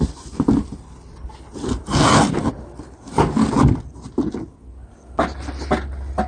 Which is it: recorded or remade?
recorded